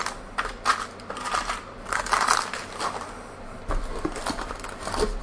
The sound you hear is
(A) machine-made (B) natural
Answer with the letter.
B